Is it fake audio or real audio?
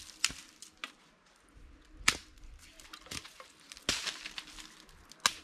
real